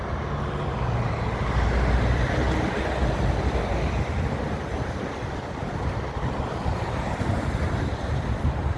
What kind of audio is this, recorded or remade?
recorded